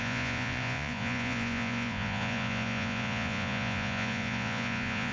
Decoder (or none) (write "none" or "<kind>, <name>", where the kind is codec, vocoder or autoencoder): vocoder, Vocos